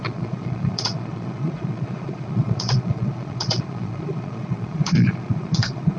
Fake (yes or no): yes